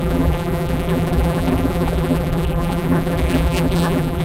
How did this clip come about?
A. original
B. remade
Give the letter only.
B